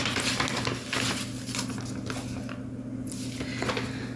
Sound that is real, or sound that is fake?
real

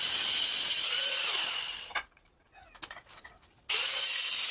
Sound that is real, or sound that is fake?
real